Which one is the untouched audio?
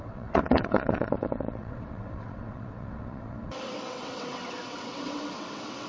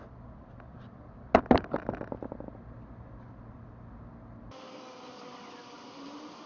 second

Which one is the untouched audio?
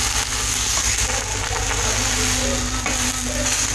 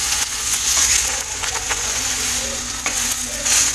first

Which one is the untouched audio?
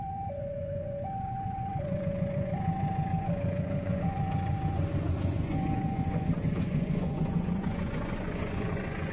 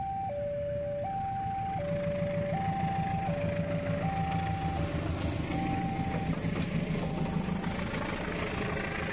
second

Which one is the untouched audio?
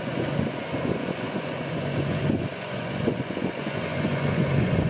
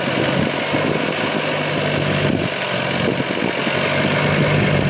second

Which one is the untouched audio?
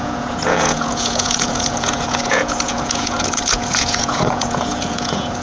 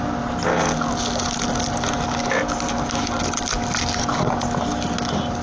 second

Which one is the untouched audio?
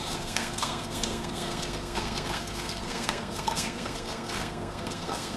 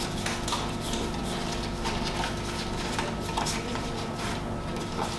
second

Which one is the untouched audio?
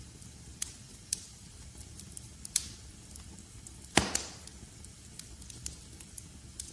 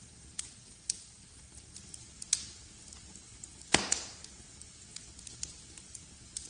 second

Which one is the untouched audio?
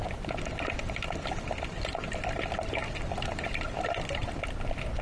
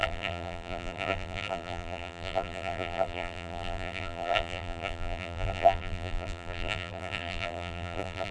first